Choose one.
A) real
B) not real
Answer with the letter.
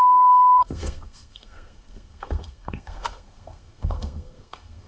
B